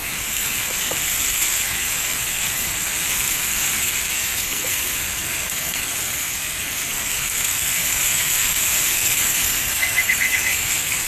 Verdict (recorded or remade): remade